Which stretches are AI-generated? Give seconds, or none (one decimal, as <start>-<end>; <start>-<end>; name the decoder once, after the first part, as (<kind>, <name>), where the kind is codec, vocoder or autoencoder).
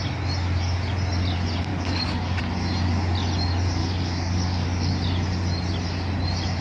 1.7-2.4 (codec, DAC); 3.8-4.9